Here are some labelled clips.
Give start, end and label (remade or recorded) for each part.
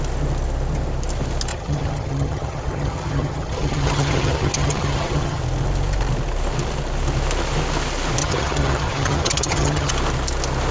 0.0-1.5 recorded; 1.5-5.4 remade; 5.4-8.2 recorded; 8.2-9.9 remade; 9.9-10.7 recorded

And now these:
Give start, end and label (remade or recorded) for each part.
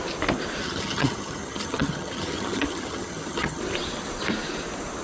0.0-0.6 recorded; 0.6-3.6 remade; 3.6-5.0 recorded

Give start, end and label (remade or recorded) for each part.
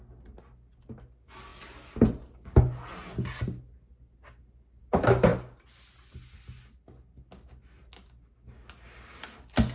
0.0-9.7 recorded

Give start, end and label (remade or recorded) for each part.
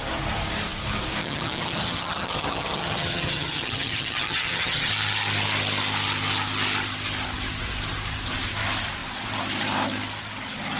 0.0-1.2 recorded; 1.2-4.9 remade; 4.9-10.8 recorded